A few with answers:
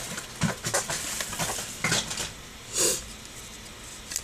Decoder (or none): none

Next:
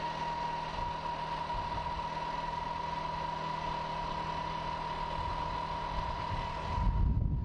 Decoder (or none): none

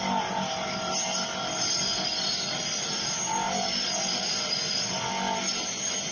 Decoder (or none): none